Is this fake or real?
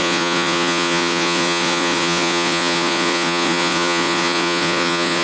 fake